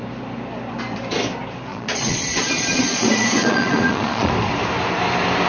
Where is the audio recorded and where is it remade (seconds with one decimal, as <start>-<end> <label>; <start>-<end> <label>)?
0.0-1.7 recorded; 1.7-4.3 remade; 4.3-5.5 recorded